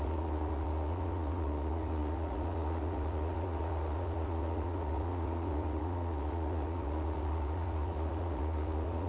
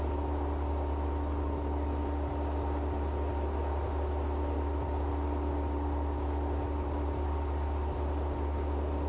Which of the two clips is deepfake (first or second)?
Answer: first